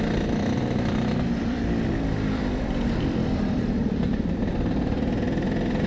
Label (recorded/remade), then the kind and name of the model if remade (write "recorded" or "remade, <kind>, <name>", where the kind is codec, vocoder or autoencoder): remade, vocoder, BigVGAN v2